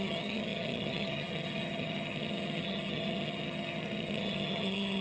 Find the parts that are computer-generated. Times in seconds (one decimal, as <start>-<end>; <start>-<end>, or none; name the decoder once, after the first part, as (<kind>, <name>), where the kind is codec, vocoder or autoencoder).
0.0-5.0 (vocoder, HiFi-GAN)